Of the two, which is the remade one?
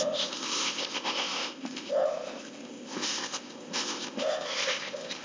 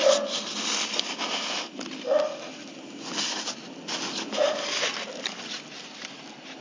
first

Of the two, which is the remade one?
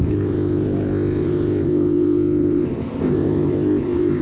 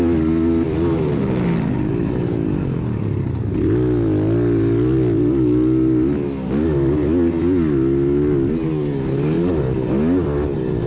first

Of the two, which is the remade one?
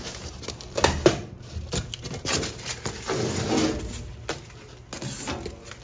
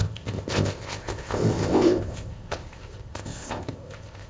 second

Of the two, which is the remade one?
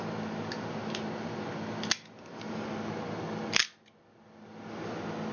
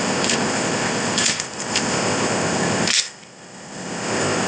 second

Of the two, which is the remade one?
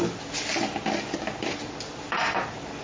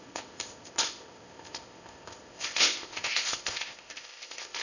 second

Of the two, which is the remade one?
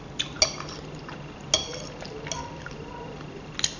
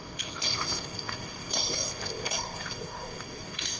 second